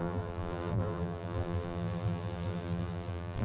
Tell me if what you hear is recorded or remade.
remade